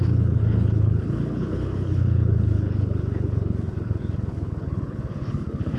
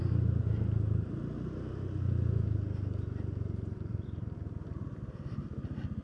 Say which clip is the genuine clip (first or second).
second